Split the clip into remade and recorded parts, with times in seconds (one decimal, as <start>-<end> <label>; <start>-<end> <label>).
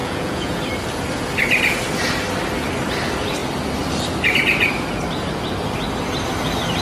0.0-0.6 remade; 0.6-6.8 recorded